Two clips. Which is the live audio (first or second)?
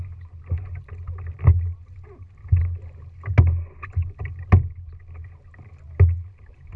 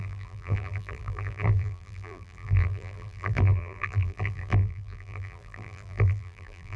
first